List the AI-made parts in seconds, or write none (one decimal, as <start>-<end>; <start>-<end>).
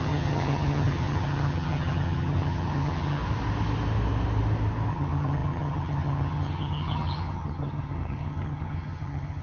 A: 0.0-3.2; 4.9-9.4